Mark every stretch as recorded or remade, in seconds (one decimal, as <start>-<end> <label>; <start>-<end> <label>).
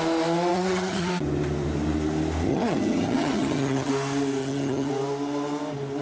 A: 0.0-0.5 recorded; 0.5-1.1 remade; 1.1-2.5 recorded; 2.5-3.9 remade; 3.9-4.4 recorded; 4.4-4.9 remade; 4.9-6.0 recorded